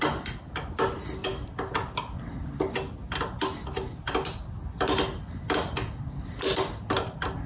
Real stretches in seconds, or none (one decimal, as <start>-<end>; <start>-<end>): 0.0-7.5